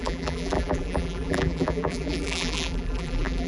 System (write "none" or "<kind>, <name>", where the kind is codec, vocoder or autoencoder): vocoder, BigVGAN v2